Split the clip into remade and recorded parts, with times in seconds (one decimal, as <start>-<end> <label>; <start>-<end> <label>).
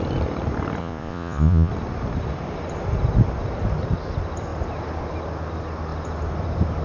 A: 0.0-0.8 recorded; 0.8-1.7 remade; 1.7-6.8 recorded